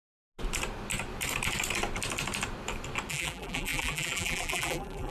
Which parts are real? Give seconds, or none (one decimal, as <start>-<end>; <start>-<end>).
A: 0.0-3.1

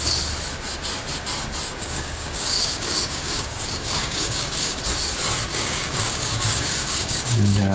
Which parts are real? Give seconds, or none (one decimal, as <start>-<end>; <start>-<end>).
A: 0.0-1.8; 4.8-5.5